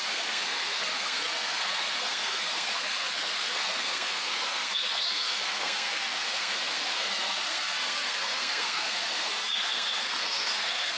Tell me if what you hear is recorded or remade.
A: remade